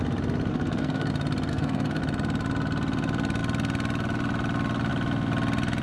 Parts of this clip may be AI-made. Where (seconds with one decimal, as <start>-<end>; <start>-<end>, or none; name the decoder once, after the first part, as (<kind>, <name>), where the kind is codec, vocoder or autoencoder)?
0.5-1.1 (codec, SNAC); 1.5-2.0